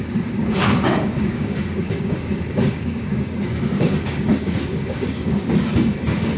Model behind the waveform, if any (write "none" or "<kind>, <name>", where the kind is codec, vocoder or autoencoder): codec, DAC